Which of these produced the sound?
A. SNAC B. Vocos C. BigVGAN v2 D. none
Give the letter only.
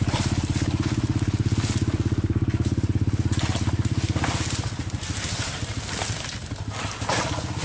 D